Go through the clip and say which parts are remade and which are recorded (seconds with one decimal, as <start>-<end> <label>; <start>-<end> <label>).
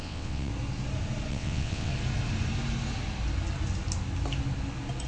0.0-0.5 remade; 0.5-1.3 recorded; 1.3-1.9 remade; 1.9-5.1 recorded